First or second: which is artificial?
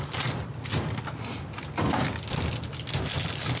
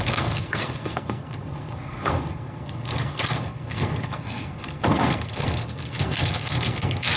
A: second